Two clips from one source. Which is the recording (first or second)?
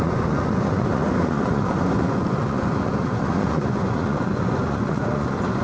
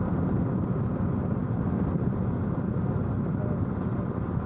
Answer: second